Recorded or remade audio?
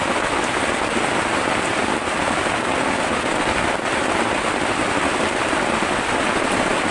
recorded